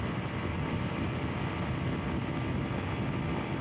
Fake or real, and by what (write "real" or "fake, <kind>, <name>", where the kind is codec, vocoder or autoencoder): real